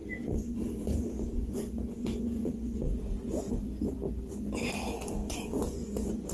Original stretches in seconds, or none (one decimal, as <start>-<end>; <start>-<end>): 2.9-5.3